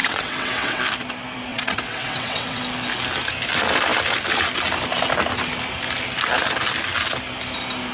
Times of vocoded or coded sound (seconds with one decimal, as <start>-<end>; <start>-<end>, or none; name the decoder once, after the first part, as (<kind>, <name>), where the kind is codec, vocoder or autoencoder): 0.0-0.8 (vocoder, WaveNeXt); 1.5-2.6